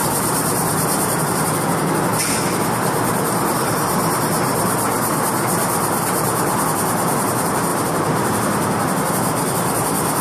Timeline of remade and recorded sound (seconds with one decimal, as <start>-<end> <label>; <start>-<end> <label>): 0.0-1.6 remade; 1.6-7.7 recorded; 7.7-8.8 remade; 8.8-10.2 recorded